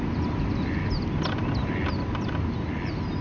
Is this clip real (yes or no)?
yes